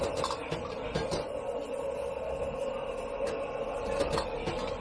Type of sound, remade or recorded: recorded